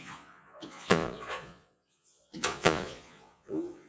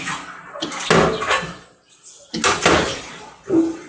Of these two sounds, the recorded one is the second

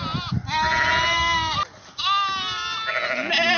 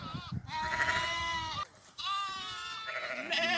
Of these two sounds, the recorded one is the first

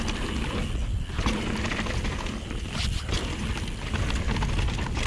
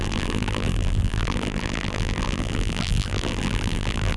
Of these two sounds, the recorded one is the first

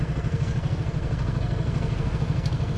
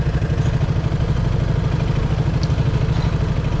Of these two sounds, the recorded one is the second